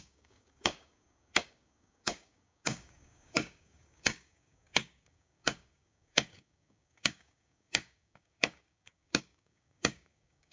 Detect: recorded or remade remade